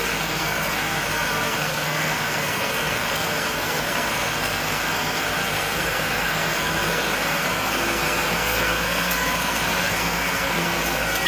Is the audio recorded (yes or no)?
no